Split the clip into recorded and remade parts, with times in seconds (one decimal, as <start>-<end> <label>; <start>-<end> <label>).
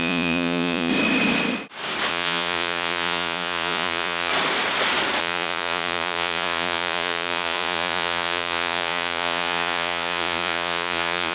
0.0-0.9 remade; 0.9-2.1 recorded; 2.1-4.3 remade; 4.3-5.2 recorded; 5.2-11.3 remade